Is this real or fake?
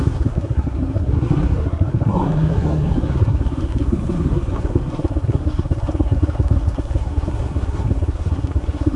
fake